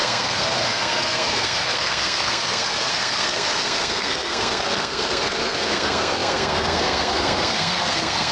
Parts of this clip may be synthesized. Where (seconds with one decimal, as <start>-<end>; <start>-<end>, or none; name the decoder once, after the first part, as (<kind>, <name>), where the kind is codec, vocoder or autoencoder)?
0.0-8.3 (codec, SNAC)